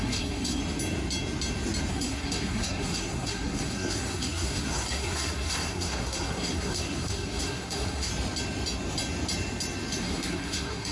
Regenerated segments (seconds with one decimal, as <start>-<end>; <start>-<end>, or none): 0.0-0.6; 1.9-8.1; 10.0-10.9

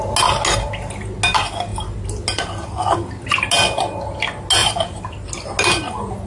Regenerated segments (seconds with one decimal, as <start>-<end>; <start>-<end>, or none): none

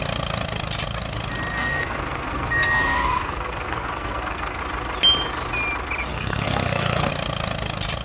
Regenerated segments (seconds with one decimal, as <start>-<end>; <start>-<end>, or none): 1.5-4.6; 6.1-7.1